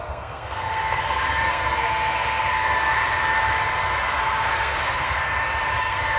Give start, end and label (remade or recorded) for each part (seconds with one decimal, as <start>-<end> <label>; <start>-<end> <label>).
0.0-2.9 remade; 2.9-4.2 recorded; 4.2-5.3 remade; 5.3-5.8 recorded; 5.8-6.2 remade

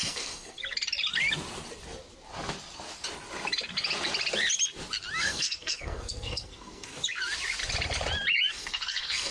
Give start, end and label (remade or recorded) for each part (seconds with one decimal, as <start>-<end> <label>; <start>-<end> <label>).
0.0-0.6 remade; 0.6-5.2 recorded; 5.2-6.9 remade; 6.9-8.5 recorded; 8.5-9.3 remade

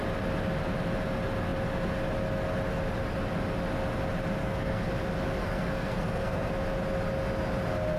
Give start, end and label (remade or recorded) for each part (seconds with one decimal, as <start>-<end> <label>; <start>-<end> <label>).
0.0-4.4 recorded; 4.4-4.9 remade; 4.9-5.4 recorded; 5.4-6.5 remade; 6.5-8.0 recorded